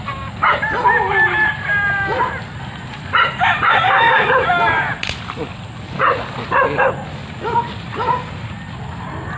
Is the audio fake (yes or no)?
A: no